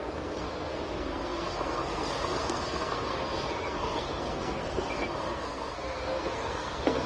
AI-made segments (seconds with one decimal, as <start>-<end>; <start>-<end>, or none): 0.0-7.1